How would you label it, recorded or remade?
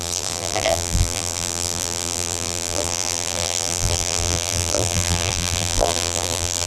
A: remade